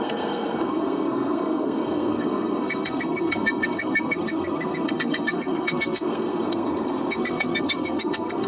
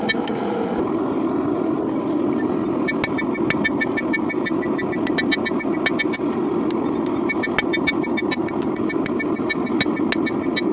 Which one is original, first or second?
second